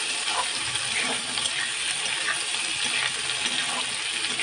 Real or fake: real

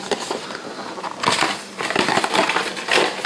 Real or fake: real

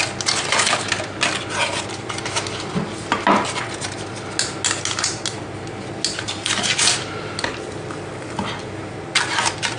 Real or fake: real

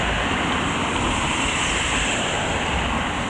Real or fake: fake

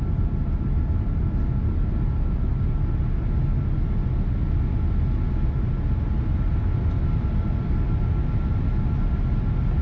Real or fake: real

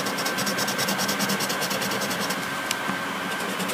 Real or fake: real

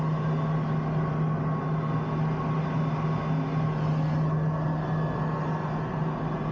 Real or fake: real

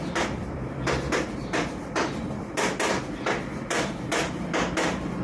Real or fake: fake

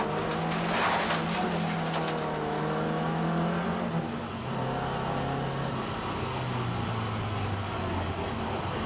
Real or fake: real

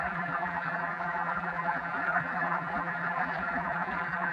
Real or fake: fake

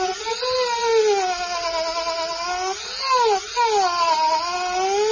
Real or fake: real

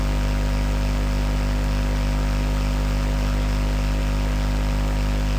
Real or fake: real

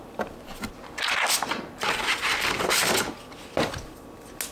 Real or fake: real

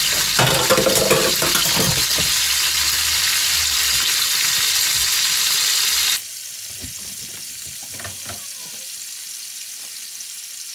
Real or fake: real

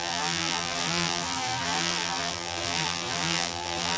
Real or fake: fake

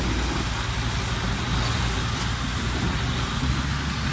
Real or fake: real